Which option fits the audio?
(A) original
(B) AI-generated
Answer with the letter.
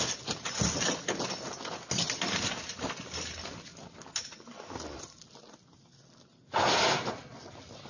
A